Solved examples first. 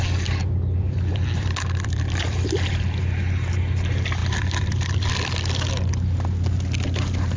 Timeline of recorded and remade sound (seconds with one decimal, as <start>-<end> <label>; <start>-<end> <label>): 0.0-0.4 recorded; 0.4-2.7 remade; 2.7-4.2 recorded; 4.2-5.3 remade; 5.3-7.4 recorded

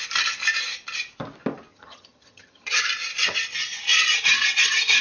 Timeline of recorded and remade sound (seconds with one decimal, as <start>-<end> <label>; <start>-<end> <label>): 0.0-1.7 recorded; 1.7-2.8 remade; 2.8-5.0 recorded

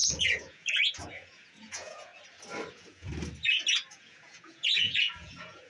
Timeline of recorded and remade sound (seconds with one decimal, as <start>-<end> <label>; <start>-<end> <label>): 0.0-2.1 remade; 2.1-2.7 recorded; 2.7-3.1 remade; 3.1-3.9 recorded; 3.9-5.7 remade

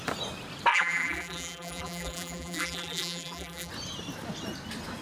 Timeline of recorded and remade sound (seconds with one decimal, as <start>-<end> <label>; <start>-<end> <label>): 0.0-0.7 recorded; 0.7-3.7 remade; 3.7-5.0 recorded